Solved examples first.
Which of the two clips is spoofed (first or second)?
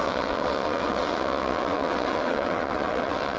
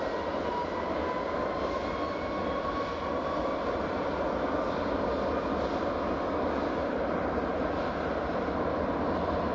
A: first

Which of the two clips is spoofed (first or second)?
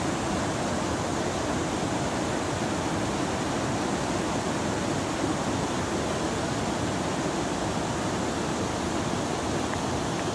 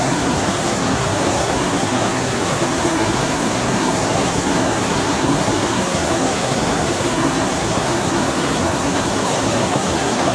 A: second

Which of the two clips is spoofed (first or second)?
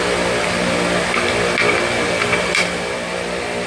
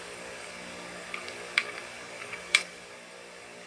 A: second